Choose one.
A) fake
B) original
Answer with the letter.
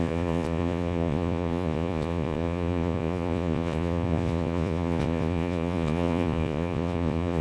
A